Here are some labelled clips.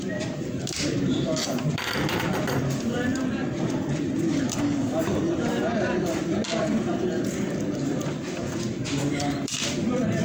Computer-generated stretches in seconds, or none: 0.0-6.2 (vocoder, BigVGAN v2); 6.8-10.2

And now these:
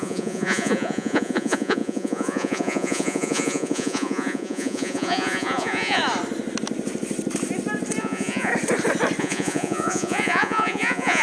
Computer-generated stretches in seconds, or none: 0.0-6.0 (vocoder, Vocos); 8.0-8.5; 9.2-11.2

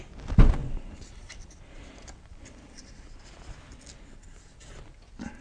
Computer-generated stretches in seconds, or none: 0.6-3.8 (vocoder, BigVGAN v2)